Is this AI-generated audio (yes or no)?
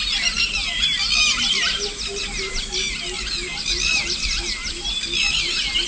no